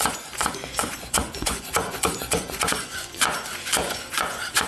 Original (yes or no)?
no